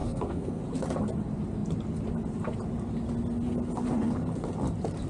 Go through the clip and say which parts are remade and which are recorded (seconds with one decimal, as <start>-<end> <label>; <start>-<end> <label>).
0.0-0.6 remade; 0.6-5.1 recorded